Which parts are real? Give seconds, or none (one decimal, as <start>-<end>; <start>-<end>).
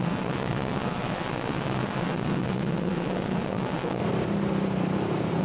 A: 4.0-5.4